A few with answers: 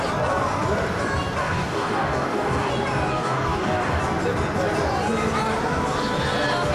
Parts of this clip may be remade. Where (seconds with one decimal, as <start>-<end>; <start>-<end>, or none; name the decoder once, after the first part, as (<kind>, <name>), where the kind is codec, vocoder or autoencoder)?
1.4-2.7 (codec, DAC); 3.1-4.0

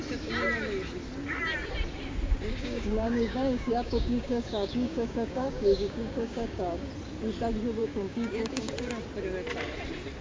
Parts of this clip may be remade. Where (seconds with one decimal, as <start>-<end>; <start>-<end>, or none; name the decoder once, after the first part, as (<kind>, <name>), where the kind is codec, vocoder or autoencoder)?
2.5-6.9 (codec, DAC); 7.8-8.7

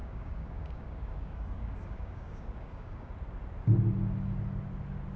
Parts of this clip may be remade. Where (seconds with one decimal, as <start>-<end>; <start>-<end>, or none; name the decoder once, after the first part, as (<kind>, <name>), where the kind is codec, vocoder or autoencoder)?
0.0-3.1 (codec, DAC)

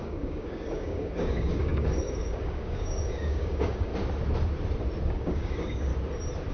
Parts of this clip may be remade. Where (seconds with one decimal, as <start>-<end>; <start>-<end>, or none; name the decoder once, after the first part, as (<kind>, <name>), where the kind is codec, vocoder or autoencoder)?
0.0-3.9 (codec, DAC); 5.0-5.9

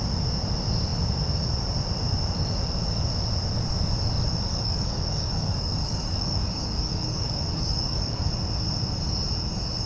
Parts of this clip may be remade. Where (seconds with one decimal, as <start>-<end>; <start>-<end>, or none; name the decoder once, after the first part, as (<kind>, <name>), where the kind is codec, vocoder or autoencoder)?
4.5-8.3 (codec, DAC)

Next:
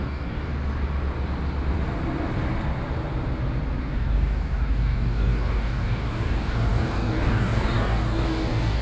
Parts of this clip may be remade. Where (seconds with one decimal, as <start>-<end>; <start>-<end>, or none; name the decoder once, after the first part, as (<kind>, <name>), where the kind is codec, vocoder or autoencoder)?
0.0-0.5 (codec, DAC); 3.8-8.8

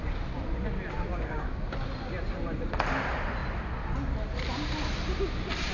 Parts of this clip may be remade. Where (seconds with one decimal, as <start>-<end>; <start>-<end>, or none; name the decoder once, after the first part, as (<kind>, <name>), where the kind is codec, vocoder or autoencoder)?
1.1-1.7 (codec, DAC)